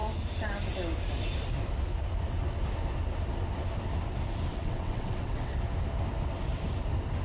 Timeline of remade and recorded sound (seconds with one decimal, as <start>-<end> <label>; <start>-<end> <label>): 0.0-4.5 recorded; 4.5-5.6 remade; 5.6-7.2 recorded